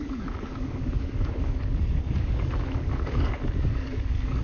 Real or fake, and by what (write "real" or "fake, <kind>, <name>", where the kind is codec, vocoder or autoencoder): fake, codec, DAC